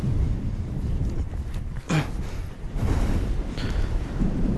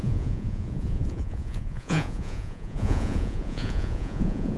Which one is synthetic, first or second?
second